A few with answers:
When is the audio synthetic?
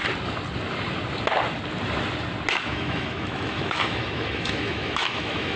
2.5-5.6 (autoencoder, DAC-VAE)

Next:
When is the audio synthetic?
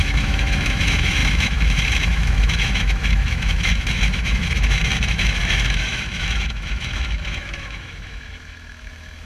0.0-9.3 (autoencoder, DAC-VAE)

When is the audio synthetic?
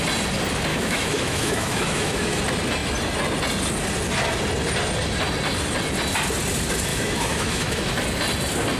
0.7-2.4 (autoencoder, DAC-VAE); 6.9-7.9